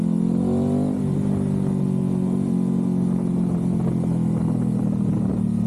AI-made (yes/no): no